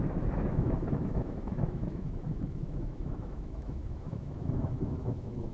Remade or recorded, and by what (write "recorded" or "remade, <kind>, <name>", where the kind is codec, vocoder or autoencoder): remade, autoencoder, DAC-VAE